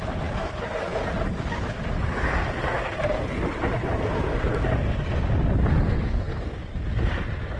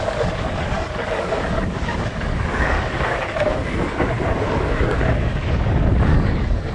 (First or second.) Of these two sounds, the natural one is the first